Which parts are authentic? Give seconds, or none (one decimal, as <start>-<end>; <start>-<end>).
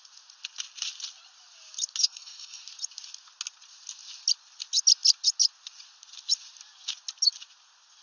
0.0-2.0; 2.6-8.0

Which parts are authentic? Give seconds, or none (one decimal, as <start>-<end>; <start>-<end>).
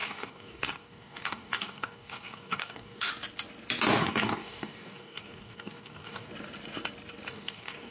3.1-4.0; 6.3-7.3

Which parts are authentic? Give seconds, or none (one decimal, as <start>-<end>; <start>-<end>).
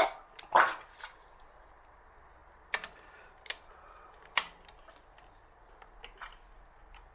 0.0-7.1